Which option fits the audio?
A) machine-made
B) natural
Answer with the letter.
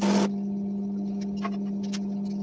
B